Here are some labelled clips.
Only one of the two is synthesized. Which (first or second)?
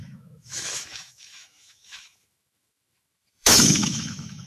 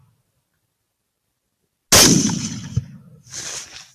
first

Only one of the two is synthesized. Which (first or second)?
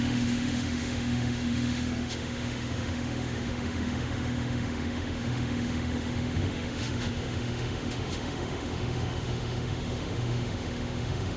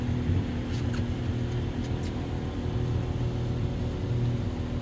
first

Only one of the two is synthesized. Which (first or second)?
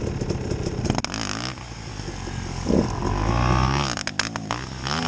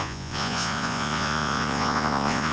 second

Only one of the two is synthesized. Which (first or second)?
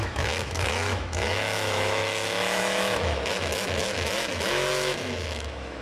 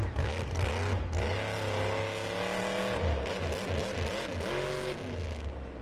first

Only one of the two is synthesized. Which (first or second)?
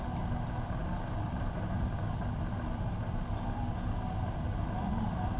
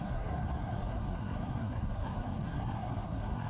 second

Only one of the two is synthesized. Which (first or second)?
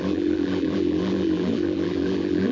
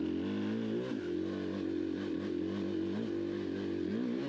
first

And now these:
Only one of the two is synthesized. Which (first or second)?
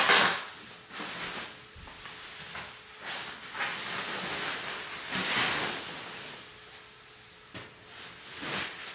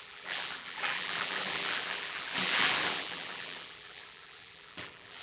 second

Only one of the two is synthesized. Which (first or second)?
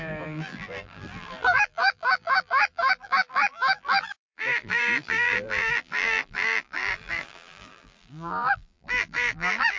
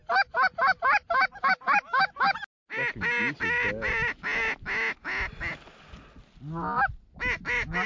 first